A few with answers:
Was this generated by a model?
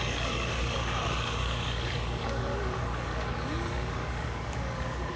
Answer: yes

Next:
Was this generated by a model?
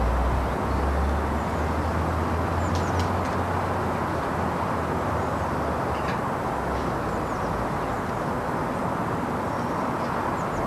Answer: no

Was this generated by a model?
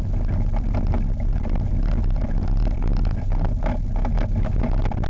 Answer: no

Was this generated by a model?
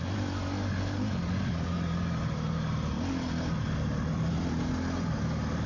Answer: no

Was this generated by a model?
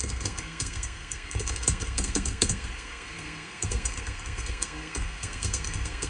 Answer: yes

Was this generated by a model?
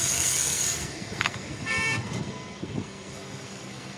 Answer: yes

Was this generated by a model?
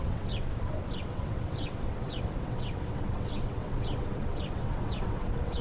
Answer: yes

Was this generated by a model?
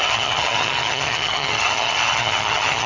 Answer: yes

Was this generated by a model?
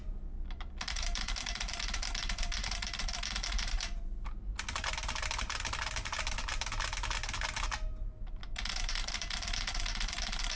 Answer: no